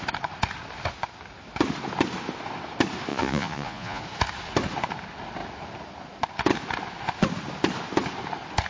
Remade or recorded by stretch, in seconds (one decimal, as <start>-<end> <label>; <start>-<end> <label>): 0.0-3.1 recorded; 3.1-4.0 remade; 4.0-8.7 recorded